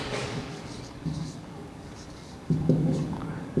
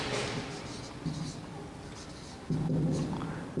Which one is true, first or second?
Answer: second